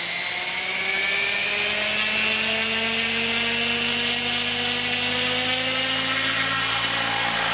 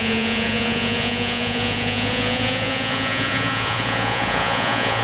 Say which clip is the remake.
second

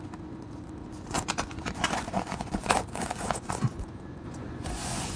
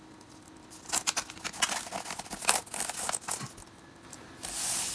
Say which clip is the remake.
first